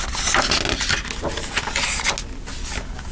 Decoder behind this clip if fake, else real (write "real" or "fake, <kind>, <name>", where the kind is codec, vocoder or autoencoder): real